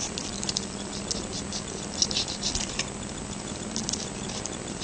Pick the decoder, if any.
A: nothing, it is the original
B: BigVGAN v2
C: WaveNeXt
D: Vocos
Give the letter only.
A